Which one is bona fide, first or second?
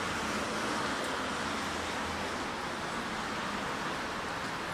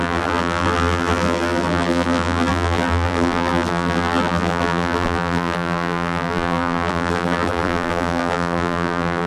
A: first